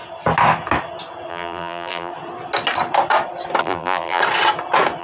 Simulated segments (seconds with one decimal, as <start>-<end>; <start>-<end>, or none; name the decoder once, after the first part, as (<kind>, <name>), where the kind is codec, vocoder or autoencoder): 1.3-2.1 (vocoder, BigVGAN v2); 3.6-4.2